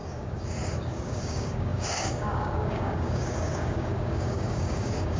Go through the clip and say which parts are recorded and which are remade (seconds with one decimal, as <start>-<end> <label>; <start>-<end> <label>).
0.0-5.2 remade